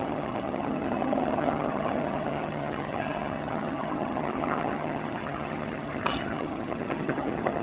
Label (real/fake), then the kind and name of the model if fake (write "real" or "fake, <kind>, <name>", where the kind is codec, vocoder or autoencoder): fake, vocoder, HiFi-GAN